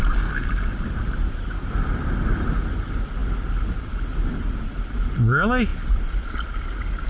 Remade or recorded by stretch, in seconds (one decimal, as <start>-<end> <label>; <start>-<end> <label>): 0.0-7.1 recorded